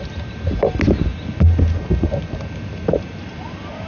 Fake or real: real